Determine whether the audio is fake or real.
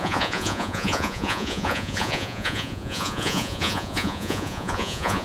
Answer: fake